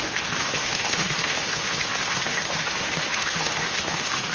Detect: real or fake fake